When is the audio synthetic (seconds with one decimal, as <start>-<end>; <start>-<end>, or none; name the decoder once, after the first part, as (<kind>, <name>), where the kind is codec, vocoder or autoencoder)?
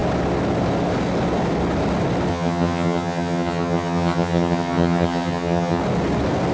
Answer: 2.3-5.8 (vocoder, HiFi-GAN)